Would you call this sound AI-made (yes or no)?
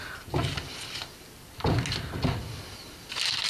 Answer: no